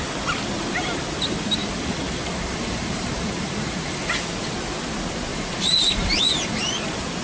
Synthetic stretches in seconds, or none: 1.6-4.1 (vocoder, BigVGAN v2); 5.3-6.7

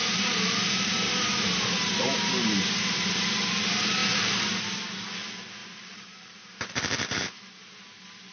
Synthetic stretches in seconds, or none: 0.0-1.1 (vocoder, BigVGAN v2); 4.0-4.6; 5.6-7.5

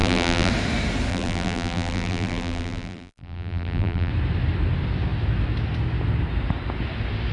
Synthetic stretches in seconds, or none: 0.0-0.5 (vocoder, BigVGAN v2); 1.1-4.1